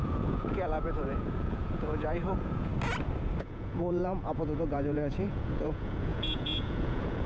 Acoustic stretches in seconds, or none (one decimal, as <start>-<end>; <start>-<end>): 2.7-3.4